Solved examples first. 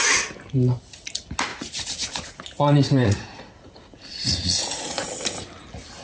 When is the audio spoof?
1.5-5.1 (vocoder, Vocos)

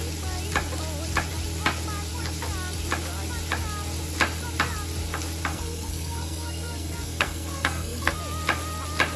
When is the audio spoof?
5.5-8.2 (codec, SNAC)

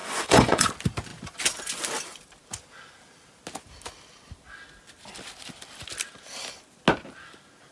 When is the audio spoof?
0.0-0.7 (vocoder, Vocos)

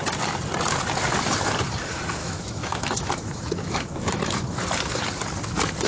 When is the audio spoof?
2.2-4.6 (autoencoder, DAC-VAE)